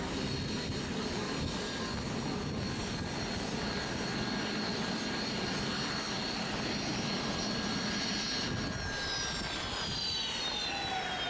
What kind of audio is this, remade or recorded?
recorded